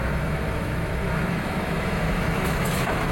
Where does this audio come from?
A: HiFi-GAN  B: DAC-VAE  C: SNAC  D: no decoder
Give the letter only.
B